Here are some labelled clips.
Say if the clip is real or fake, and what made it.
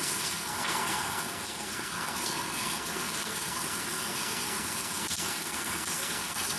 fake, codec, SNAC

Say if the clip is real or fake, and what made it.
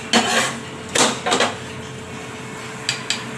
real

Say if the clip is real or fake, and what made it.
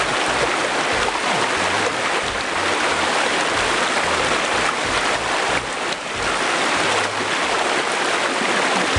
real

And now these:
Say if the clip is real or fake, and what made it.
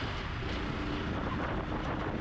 real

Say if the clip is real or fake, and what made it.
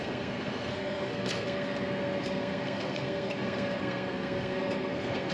fake, codec, SNAC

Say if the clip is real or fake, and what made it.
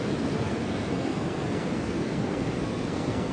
fake, codec, SNAC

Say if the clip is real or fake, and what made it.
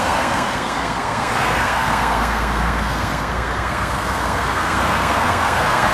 fake, codec, SNAC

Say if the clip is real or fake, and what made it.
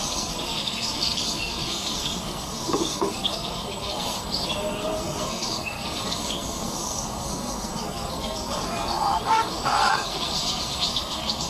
fake, codec, SNAC